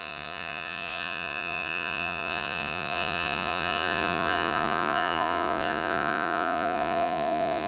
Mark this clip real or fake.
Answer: fake